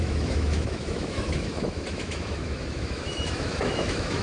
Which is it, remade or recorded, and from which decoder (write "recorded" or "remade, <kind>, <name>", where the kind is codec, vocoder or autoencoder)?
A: remade, autoencoder, DAC-VAE